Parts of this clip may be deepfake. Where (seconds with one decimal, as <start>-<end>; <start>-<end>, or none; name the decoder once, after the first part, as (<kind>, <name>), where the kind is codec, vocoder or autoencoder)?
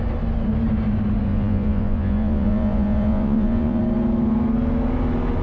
1.3-3.8 (vocoder, Vocos)